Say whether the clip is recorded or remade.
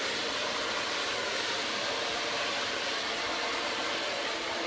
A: remade